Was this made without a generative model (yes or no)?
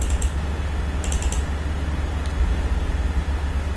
yes